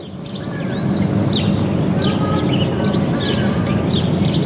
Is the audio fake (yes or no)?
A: no